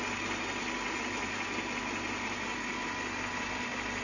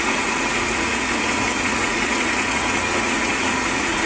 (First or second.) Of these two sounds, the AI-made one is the second